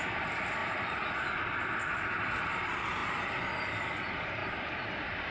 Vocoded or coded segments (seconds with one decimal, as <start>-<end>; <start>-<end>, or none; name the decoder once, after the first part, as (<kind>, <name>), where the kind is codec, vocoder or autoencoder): 0.6-1.1 (vocoder, BigVGAN v2); 3.0-3.8; 4.4-5.3